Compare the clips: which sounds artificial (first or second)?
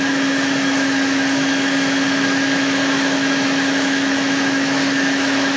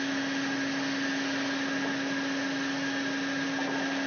first